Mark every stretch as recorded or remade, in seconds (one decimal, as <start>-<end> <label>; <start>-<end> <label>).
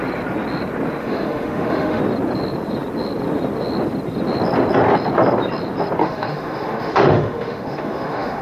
0.0-1.0 recorded; 1.0-2.0 remade; 2.0-6.0 recorded; 6.0-8.4 remade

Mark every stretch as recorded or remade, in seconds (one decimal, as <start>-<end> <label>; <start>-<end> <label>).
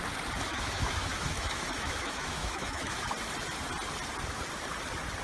0.0-0.5 recorded; 0.5-3.1 remade; 3.1-5.2 recorded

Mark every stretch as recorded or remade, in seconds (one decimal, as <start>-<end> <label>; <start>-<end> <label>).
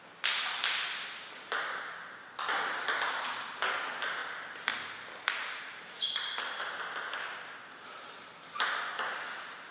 0.0-9.7 recorded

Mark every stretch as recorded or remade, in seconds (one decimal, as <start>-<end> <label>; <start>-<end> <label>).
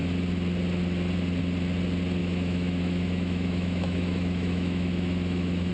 0.0-2.2 recorded; 2.2-5.7 remade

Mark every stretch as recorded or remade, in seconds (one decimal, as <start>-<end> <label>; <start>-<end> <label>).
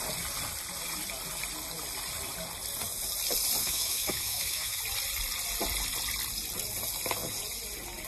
0.0-3.6 recorded; 3.6-4.8 remade; 4.8-8.1 recorded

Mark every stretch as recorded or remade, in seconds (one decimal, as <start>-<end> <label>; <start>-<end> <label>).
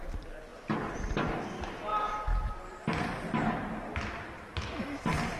0.0-5.4 recorded